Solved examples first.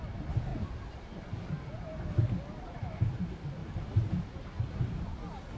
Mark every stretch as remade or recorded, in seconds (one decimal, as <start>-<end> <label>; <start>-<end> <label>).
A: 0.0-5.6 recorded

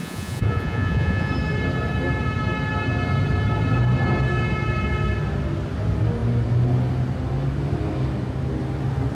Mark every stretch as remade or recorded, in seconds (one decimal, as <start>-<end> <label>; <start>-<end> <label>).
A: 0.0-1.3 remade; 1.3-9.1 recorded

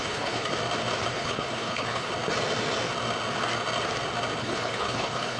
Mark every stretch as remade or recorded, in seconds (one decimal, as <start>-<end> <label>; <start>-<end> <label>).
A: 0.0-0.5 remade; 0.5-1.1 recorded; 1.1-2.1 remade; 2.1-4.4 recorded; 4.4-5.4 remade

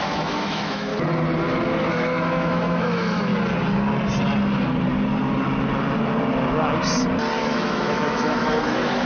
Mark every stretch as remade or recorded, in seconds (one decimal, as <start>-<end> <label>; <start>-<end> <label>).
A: 0.0-0.9 remade; 0.9-1.9 recorded; 1.9-3.3 remade; 3.3-7.4 recorded; 7.4-9.1 remade

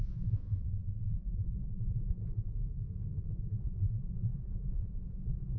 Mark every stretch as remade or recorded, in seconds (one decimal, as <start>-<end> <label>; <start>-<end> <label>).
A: 0.0-2.5 remade; 2.5-3.2 recorded; 3.2-5.6 remade

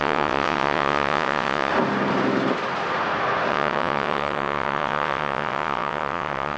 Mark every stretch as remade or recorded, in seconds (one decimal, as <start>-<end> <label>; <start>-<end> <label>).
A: 0.0-1.7 remade; 1.7-3.5 recorded; 3.5-6.6 remade